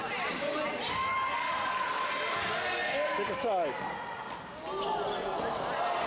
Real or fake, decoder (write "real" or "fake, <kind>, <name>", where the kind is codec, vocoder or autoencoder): real